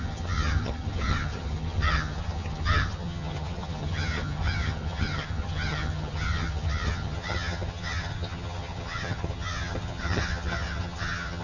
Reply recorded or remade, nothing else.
remade